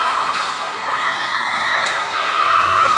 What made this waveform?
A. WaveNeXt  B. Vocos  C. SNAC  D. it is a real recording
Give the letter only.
C